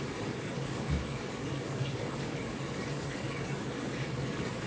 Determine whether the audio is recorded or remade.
remade